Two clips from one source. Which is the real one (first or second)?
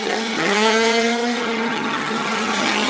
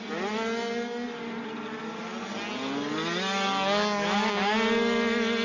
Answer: second